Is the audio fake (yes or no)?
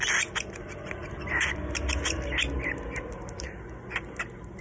no